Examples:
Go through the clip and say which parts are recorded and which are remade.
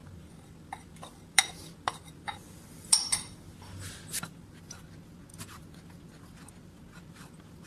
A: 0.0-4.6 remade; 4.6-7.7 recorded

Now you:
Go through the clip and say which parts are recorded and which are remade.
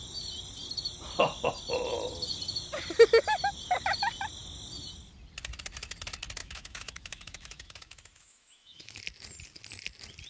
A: 0.0-6.4 recorded; 6.4-9.0 remade; 9.0-10.3 recorded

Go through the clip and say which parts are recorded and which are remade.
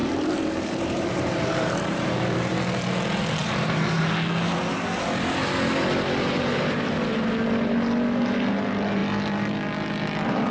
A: 0.0-2.9 remade; 2.9-3.4 recorded; 3.4-4.0 remade; 4.0-10.5 recorded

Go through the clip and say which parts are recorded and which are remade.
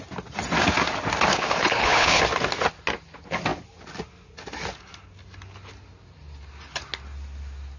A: 0.0-1.3 recorded; 1.3-2.2 remade; 2.2-7.8 recorded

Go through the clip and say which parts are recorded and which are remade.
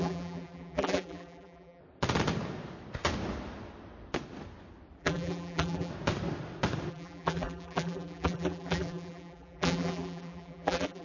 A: 0.0-1.8 remade; 1.8-5.0 recorded; 5.0-5.9 remade; 5.9-6.9 recorded; 6.9-11.0 remade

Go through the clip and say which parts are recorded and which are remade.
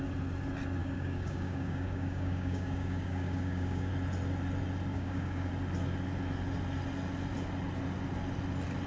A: 0.0-0.8 recorded; 0.8-3.9 remade; 3.9-4.9 recorded; 4.9-5.5 remade; 5.5-8.9 recorded